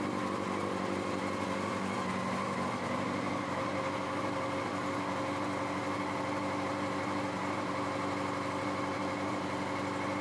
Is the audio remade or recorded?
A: recorded